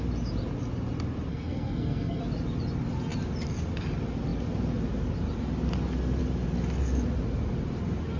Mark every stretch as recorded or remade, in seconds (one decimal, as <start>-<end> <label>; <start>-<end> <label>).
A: 0.0-1.3 recorded; 1.3-2.2 remade; 2.2-8.2 recorded